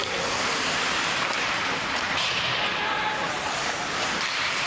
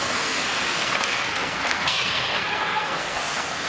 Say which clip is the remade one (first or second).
second